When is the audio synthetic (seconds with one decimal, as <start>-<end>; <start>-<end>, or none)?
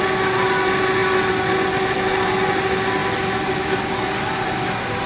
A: none